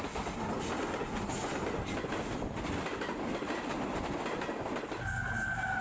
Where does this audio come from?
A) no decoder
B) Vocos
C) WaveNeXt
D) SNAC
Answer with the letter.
A